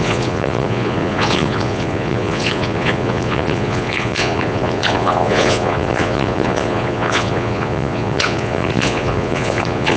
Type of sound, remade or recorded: remade